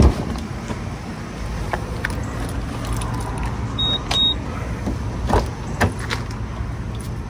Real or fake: real